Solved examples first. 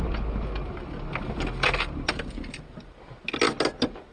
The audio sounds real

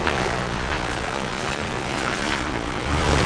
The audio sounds fake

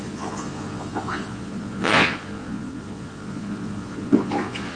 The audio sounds fake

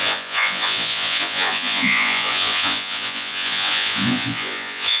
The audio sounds fake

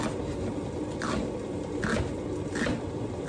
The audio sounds real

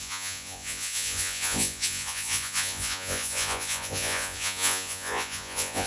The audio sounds fake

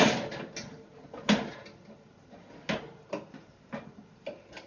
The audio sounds real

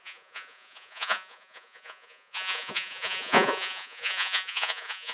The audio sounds fake